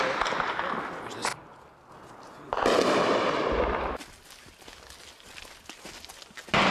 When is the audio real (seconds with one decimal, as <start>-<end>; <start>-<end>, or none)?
0.0-6.7